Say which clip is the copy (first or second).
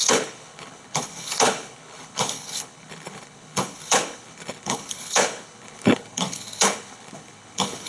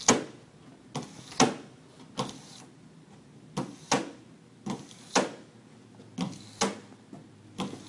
first